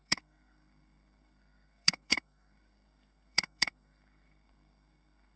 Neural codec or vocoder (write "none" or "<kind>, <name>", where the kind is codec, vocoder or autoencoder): codec, SNAC